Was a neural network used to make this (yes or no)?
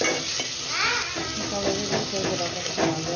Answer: no